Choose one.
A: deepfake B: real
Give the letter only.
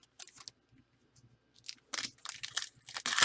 B